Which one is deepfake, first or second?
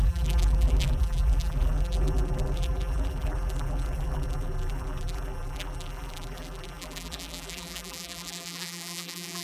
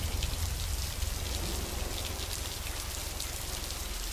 first